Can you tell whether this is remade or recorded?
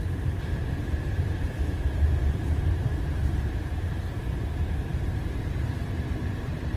remade